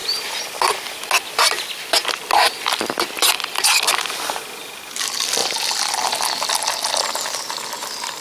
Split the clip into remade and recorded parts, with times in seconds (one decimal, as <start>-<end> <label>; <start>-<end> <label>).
0.0-8.2 recorded